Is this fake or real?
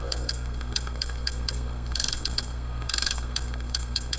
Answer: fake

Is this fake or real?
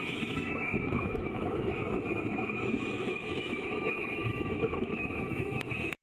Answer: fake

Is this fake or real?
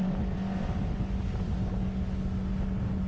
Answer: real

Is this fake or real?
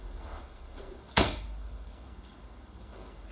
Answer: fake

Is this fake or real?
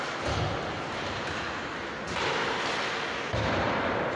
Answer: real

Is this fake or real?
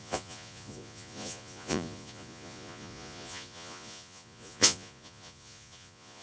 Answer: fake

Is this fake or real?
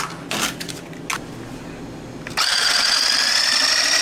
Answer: real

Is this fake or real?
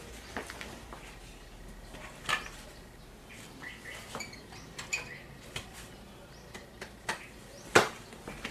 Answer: real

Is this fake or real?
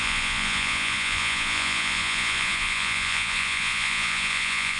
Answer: fake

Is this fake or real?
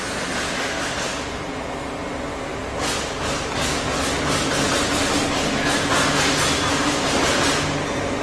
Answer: real